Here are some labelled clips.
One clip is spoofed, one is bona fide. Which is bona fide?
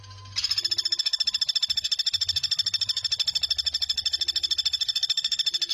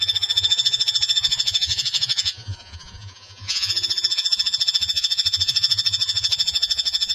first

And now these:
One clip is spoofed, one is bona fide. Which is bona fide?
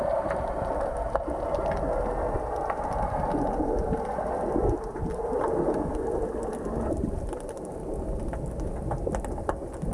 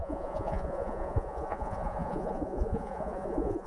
first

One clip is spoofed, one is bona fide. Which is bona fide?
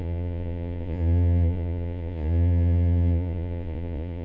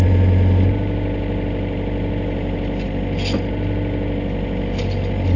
second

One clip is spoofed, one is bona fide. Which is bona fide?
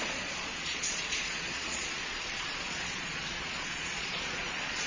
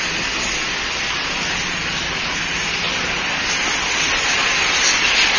second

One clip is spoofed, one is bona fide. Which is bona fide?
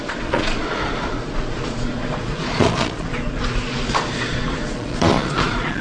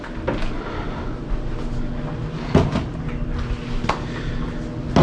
second